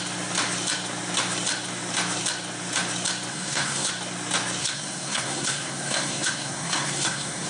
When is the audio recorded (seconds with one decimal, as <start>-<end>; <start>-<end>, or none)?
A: 0.0-3.3; 3.9-4.6